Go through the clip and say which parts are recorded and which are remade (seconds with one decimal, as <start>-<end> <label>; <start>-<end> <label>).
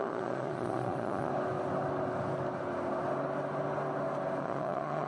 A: 0.0-1.3 remade; 1.3-4.4 recorded; 4.4-5.1 remade